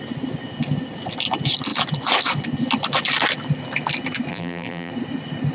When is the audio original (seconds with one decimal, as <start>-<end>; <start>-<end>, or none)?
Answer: 0.0-4.3; 4.9-5.5